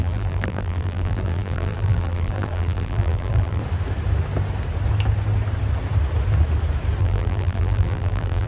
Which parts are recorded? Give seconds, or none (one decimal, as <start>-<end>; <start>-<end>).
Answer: 3.6-7.0